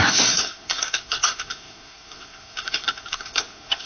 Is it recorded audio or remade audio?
remade